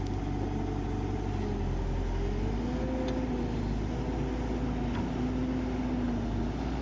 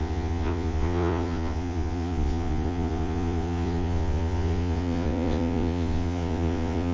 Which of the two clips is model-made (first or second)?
second